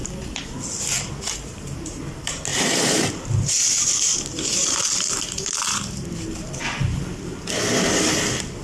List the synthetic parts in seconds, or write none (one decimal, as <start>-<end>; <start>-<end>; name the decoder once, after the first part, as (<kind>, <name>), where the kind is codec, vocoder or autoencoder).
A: 1.5-2.0 (vocoder, BigVGAN v2); 2.5-6.1